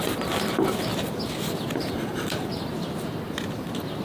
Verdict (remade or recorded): recorded